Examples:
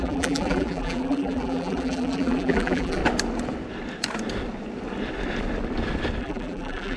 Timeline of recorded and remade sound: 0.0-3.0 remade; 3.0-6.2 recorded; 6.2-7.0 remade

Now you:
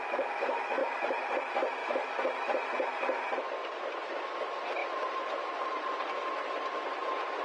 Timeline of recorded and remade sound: 0.0-0.8 recorded; 0.8-1.4 remade; 1.4-1.8 recorded; 1.8-2.7 remade; 2.7-3.6 recorded; 3.6-4.2 remade; 4.2-4.8 recorded; 4.8-5.9 remade; 5.9-7.4 recorded

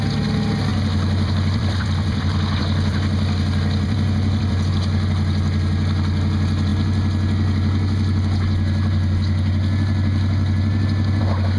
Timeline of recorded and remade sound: 0.0-0.7 recorded; 0.7-4.7 remade; 4.7-11.6 recorded

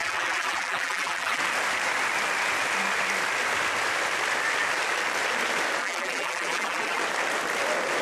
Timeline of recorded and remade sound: 0.0-1.4 remade; 1.4-5.8 recorded; 5.8-7.0 remade; 7.0-8.0 recorded

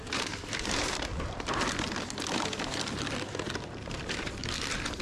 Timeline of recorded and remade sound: 0.0-1.1 remade; 1.1-3.5 recorded; 3.5-5.0 remade

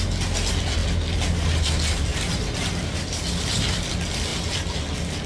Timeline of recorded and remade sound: 0.0-5.3 recorded